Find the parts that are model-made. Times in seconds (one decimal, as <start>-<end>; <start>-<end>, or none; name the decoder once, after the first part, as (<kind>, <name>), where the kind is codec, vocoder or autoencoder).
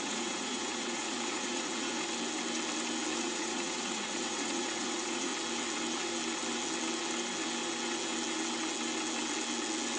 0.0-1.9 (vocoder, Vocos); 3.2-5.3